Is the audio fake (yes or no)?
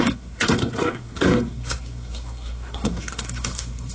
yes